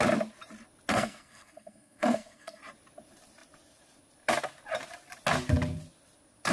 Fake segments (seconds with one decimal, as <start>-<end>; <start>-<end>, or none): 0.9-2.6

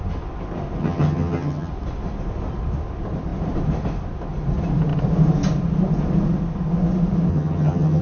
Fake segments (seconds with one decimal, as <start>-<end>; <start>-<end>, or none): 0.8-1.7; 7.3-8.0

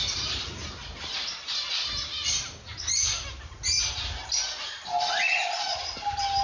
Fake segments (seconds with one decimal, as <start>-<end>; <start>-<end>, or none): none